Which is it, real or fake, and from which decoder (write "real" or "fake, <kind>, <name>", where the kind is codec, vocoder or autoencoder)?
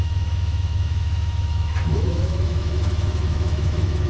fake, autoencoder, DAC-VAE